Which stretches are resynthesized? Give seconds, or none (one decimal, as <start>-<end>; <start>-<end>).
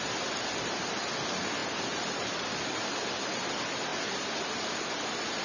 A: none